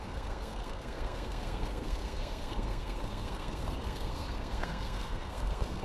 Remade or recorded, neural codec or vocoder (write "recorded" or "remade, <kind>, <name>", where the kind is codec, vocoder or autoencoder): remade, codec, SNAC